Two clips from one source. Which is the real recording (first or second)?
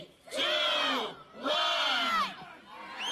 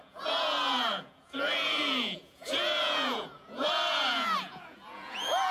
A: first